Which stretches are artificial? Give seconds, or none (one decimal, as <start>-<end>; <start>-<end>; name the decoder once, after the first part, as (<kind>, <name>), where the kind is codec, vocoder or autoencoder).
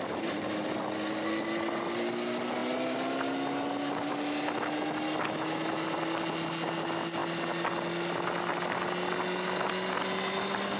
none